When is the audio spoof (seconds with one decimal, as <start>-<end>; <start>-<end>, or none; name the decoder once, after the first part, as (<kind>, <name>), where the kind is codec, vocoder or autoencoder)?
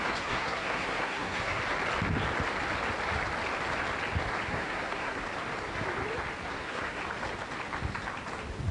0.0-1.6 (codec, SNAC); 4.5-5.2; 6.5-7.0